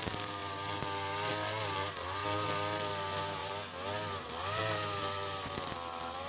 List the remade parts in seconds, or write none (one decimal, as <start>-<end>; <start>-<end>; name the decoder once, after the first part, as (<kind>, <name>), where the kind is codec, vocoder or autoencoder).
none